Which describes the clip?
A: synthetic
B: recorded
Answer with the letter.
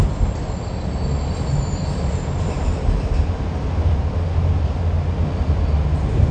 B